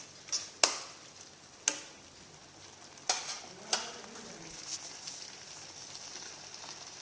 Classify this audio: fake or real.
real